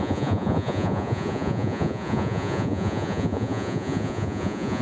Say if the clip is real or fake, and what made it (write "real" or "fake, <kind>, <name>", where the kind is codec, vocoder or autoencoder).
fake, vocoder, Vocos